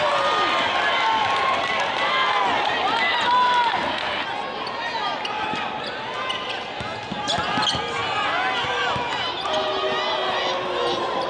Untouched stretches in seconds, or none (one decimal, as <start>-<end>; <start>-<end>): 0.0-11.3